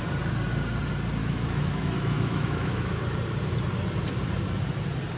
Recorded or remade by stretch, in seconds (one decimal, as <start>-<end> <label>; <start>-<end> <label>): 0.0-1.2 recorded; 1.2-3.0 remade; 3.0-5.2 recorded